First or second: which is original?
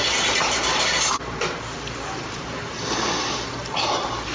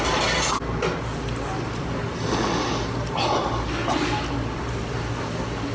second